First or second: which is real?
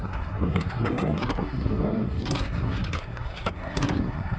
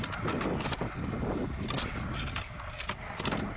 second